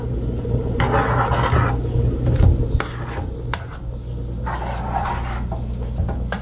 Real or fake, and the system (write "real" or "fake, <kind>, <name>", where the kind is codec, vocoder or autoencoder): real